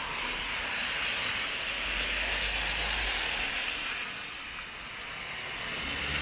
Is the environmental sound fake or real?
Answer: real